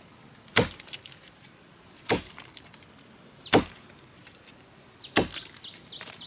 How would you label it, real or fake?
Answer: real